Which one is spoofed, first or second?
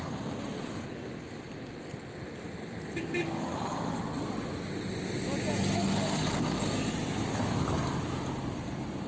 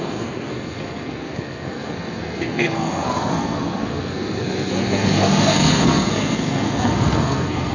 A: second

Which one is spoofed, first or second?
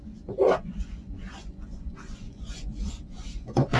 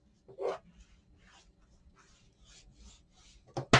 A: first